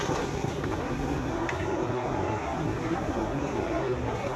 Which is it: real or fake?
fake